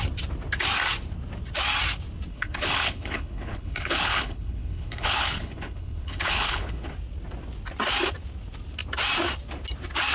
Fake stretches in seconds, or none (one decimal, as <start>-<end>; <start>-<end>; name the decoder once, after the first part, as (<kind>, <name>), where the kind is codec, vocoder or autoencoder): 2.3-6.9 (codec, HILCodec)